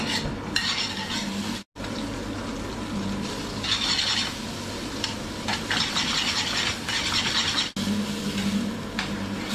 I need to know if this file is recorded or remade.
recorded